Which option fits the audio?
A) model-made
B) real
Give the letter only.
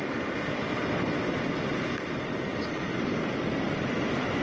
B